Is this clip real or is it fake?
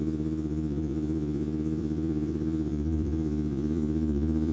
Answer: fake